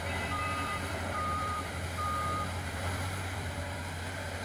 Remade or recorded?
remade